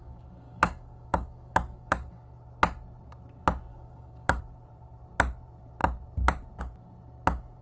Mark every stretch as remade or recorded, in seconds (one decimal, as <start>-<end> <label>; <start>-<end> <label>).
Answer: 0.0-2.1 remade; 2.1-3.7 recorded; 3.7-4.4 remade; 4.4-7.6 recorded